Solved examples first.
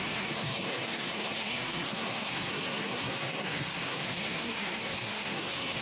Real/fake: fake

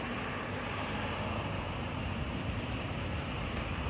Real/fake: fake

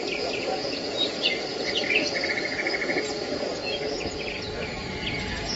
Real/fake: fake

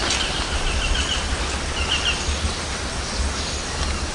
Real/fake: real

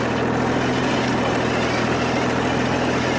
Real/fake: real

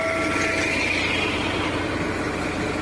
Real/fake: real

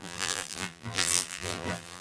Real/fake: fake